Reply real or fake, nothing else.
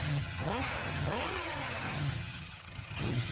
fake